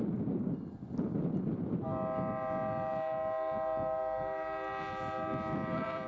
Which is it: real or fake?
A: real